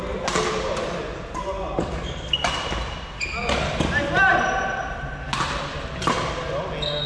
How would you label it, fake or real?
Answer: real